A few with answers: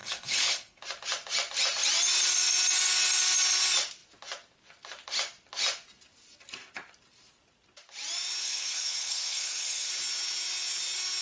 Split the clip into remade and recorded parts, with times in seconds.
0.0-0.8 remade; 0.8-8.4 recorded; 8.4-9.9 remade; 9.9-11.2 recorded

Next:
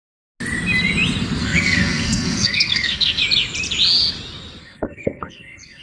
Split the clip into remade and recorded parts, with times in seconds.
0.0-1.4 recorded; 1.4-3.2 remade; 3.2-4.6 recorded; 4.6-5.8 remade